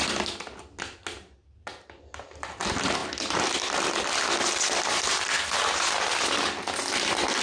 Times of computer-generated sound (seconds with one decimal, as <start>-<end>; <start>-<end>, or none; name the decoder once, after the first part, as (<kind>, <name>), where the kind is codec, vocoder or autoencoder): none